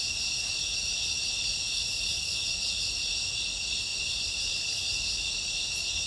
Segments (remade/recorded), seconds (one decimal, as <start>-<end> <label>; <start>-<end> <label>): 0.0-6.1 recorded